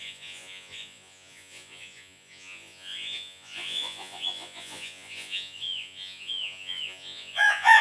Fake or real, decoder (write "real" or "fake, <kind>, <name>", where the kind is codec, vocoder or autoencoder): fake, vocoder, Vocos